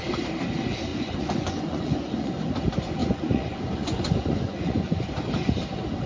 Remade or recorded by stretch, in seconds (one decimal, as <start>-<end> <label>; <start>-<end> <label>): 0.0-0.9 recorded; 0.9-2.4 remade; 2.4-3.0 recorded; 3.0-5.1 remade; 5.1-6.1 recorded